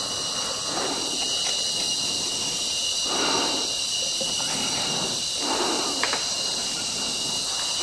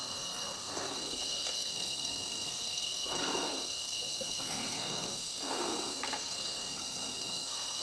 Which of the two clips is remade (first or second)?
second